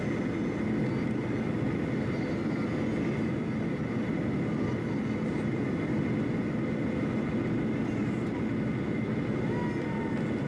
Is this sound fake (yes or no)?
no